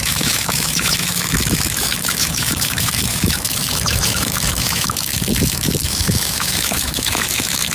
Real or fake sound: fake